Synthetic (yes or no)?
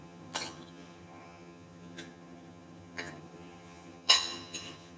yes